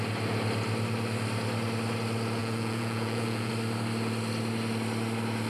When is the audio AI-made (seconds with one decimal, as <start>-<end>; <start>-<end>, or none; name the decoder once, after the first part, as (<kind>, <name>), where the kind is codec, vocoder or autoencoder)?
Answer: 2.4-3.5 (vocoder, Vocos)